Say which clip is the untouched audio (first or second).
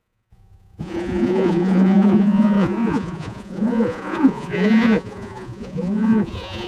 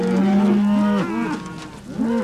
second